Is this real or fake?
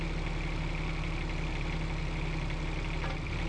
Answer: real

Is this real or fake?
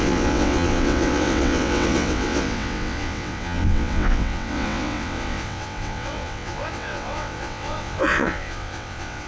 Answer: fake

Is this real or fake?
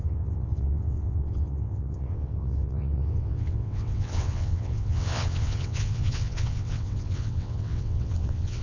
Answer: fake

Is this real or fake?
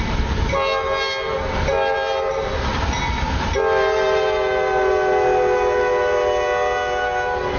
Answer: real